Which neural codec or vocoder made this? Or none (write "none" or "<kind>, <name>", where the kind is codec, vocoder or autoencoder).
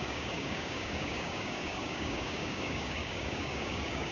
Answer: codec, DAC